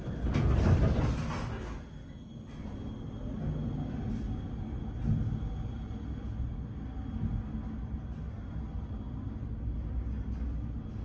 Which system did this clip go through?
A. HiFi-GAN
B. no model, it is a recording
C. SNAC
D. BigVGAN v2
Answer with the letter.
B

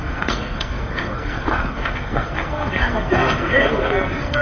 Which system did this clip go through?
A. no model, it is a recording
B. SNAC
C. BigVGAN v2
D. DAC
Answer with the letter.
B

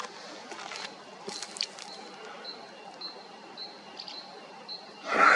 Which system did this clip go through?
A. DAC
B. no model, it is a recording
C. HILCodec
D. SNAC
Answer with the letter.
B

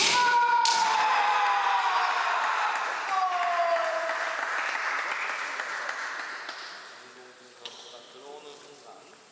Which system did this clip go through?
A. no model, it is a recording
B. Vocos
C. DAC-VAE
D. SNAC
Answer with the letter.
A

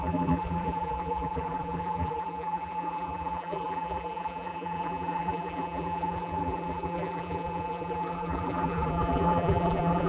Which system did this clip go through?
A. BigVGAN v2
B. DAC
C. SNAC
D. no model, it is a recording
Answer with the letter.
A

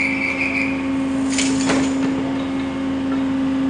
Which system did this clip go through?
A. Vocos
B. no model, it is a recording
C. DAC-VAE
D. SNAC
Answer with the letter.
B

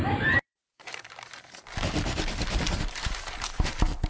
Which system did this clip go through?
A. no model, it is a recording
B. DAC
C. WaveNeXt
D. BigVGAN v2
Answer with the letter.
D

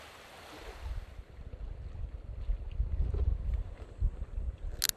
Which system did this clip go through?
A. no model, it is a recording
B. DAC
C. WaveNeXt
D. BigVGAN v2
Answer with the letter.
A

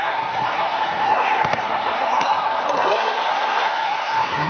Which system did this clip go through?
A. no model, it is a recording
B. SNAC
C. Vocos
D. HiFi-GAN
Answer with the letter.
B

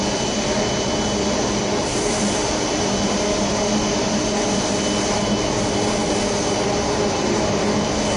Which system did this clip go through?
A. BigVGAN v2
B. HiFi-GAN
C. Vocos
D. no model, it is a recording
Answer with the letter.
D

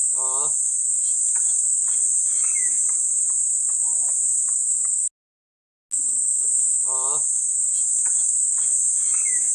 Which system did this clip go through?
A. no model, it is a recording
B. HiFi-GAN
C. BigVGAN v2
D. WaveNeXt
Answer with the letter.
A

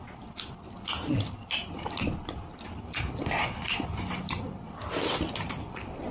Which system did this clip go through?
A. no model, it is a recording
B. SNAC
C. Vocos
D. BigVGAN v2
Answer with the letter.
A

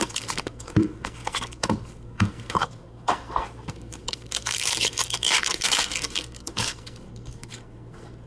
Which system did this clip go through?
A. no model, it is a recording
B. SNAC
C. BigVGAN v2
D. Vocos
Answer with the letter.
B